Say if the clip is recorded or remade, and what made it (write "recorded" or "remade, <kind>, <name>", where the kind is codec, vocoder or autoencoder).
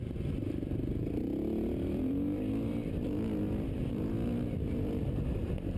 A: remade, vocoder, BigVGAN v2